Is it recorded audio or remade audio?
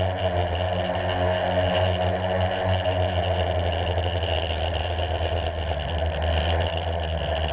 recorded